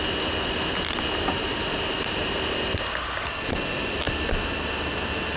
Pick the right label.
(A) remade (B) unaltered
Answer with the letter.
B